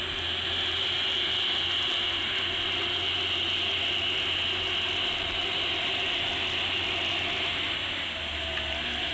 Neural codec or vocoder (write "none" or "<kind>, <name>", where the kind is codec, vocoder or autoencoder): none